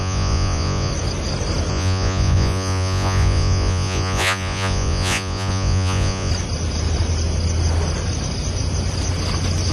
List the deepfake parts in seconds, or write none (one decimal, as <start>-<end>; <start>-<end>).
0.0-0.9; 1.7-6.3